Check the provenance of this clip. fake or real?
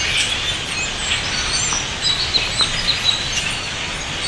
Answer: real